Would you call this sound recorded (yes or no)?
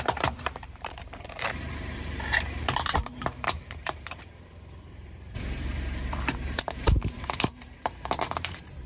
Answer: no